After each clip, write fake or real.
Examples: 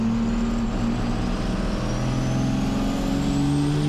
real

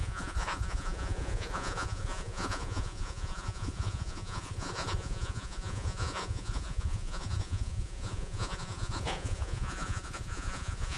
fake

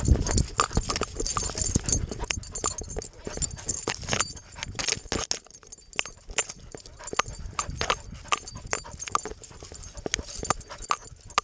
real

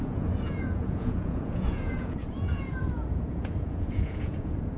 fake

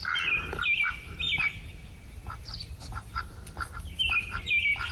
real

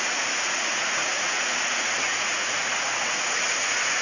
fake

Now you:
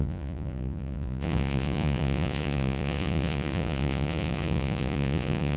fake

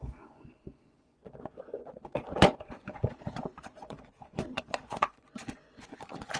fake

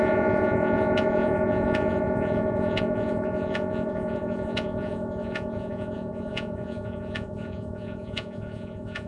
fake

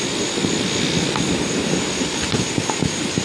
real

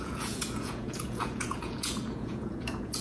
fake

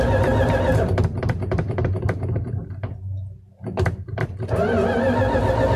real